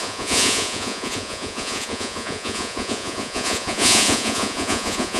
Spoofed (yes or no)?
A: yes